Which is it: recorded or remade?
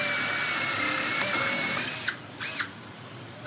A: recorded